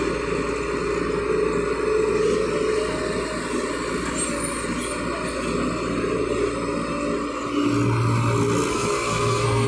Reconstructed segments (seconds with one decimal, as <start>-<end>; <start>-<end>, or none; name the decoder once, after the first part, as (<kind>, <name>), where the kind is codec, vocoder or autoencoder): 8.7-9.7 (codec, SNAC)